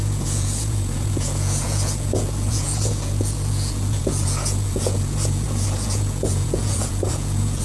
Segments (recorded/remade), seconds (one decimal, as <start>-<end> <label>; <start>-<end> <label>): 0.0-7.6 remade